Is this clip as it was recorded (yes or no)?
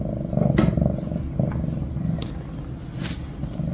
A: yes